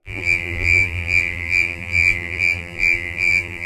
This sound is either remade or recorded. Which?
remade